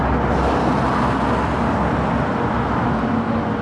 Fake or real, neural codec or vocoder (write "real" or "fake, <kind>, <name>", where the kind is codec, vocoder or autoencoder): real